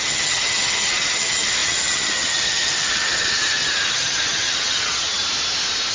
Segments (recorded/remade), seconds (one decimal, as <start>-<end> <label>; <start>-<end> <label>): 0.0-5.2 remade; 5.2-5.9 recorded